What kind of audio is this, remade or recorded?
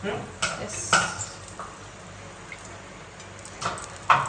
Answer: recorded